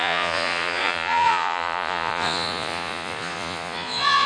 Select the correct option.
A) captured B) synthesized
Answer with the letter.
B